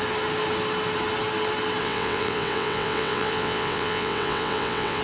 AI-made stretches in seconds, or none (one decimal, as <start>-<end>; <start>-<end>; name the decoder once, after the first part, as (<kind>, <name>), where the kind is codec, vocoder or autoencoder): 1.8-5.0 (vocoder, WaveNeXt)